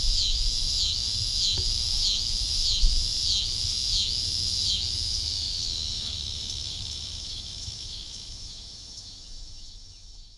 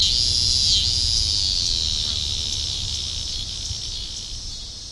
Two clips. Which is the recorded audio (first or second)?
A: second